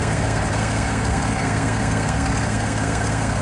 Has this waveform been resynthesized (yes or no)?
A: yes